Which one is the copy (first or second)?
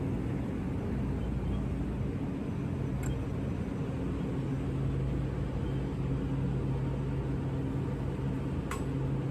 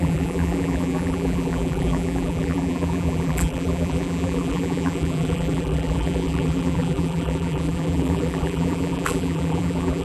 second